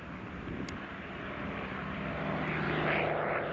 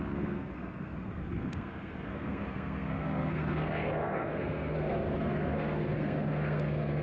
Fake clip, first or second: second